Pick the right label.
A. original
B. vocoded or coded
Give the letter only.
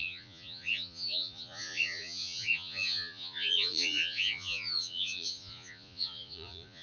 B